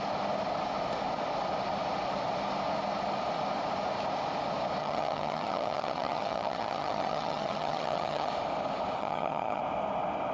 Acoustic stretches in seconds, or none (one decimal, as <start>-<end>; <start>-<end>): 0.0-4.8; 8.3-9.0; 9.6-10.3